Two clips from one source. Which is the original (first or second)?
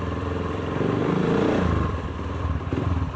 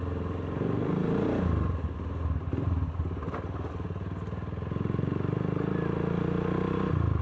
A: second